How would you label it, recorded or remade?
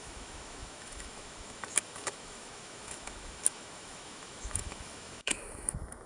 remade